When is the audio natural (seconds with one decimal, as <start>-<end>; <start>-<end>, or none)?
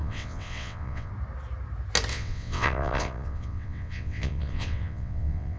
1.1-2.1